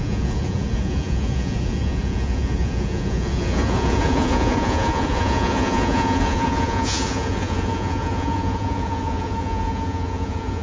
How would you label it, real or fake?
fake